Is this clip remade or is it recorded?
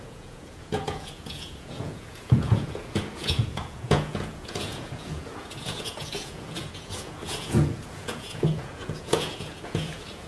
remade